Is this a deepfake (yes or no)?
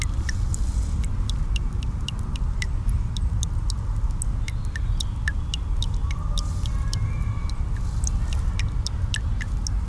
no